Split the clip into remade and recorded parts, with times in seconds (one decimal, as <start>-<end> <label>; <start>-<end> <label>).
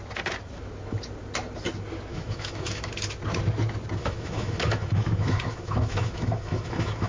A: 0.0-2.1 recorded; 2.1-2.9 remade; 2.9-4.0 recorded; 4.0-7.1 remade